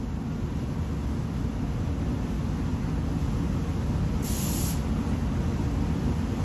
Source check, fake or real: real